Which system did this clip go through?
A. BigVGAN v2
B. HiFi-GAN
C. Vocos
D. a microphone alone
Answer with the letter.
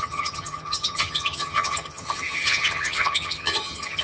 B